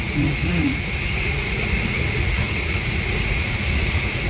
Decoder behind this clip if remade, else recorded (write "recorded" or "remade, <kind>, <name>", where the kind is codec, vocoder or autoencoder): remade, vocoder, Vocos